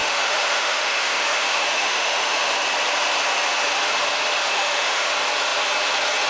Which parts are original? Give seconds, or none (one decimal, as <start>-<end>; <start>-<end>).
2.5-4.4; 5.1-6.3